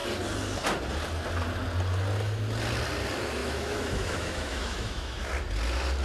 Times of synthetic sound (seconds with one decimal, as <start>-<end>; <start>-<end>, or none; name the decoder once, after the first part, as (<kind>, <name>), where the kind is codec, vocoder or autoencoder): 3.4-5.3 (autoencoder, DAC-VAE)